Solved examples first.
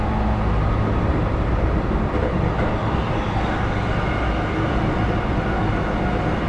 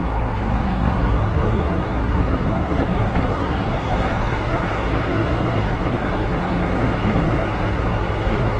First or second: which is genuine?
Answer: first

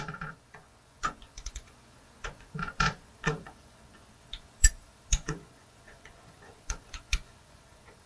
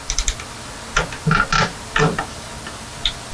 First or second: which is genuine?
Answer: second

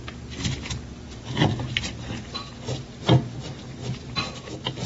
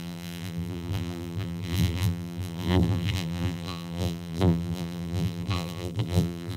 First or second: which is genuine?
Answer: first